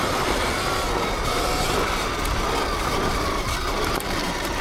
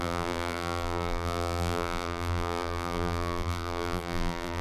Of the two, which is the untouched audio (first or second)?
first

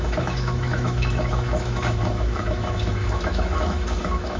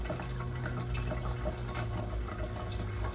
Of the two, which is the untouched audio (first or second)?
second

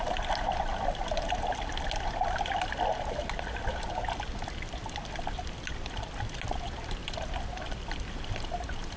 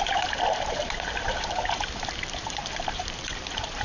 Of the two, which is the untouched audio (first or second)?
first